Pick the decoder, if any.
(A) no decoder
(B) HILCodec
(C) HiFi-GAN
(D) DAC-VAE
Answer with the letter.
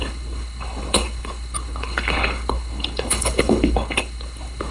B